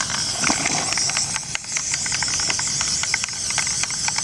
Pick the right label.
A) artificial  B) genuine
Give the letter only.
B